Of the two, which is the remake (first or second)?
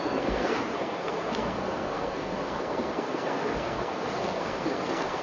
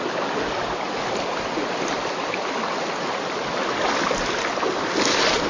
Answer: first